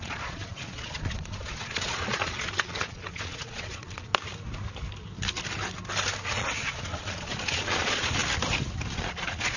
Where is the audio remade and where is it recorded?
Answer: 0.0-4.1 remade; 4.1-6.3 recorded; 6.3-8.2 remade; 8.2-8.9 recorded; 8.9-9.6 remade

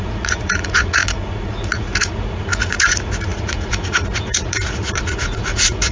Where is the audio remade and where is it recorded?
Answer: 0.0-5.9 remade

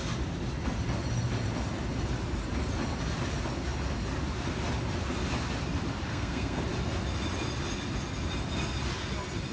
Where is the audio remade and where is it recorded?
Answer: 0.0-6.1 recorded; 6.1-6.6 remade; 6.6-9.5 recorded